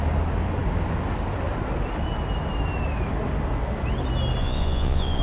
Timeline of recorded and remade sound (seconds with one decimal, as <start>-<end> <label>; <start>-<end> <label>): 0.0-4.4 recorded; 4.4-5.2 remade